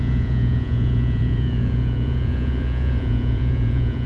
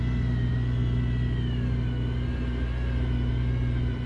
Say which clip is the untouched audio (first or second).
second